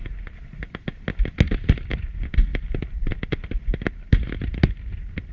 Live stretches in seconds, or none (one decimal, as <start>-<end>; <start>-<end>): 0.0-5.3